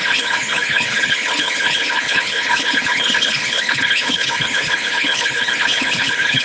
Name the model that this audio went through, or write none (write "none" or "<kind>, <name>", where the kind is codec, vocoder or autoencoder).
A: codec, HILCodec